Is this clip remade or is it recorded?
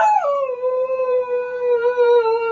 remade